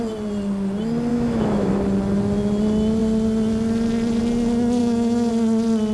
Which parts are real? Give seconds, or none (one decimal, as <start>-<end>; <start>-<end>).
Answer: 0.0-1.1; 1.7-4.8; 5.3-5.9

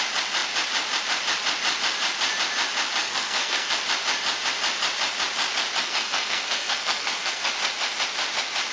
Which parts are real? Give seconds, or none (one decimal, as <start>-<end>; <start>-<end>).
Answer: 0.0-3.0; 3.7-5.8; 7.5-8.7